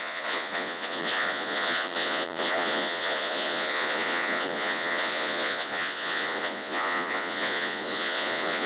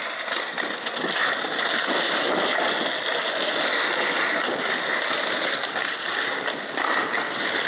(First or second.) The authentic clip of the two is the second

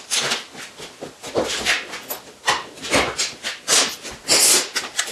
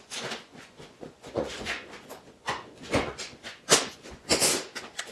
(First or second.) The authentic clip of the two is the first